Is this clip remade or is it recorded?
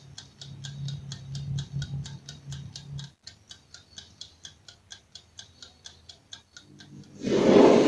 recorded